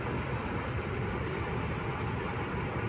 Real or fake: real